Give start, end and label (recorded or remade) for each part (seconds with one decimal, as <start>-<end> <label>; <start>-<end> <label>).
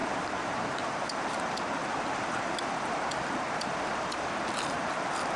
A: 0.0-1.4 remade; 1.4-1.8 recorded; 1.8-4.3 remade; 4.3-5.4 recorded